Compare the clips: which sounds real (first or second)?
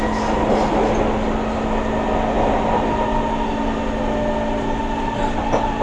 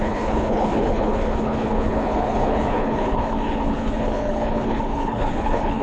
first